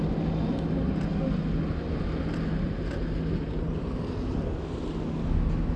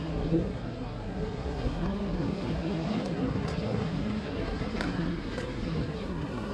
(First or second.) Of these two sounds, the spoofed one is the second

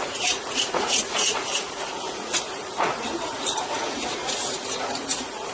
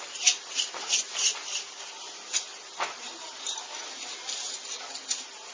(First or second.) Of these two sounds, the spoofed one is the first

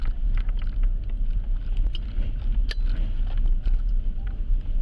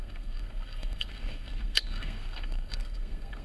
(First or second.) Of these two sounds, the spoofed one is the second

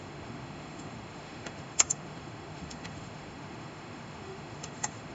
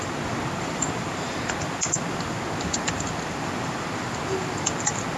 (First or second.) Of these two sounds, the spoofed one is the first